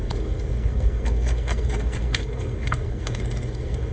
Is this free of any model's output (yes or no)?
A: no